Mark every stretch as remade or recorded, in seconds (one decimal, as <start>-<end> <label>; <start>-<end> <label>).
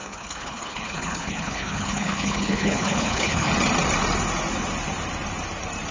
0.0-3.5 remade; 3.5-5.9 recorded